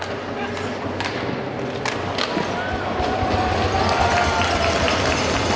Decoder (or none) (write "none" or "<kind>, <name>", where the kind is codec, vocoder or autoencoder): none